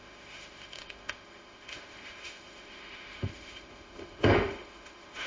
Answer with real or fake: fake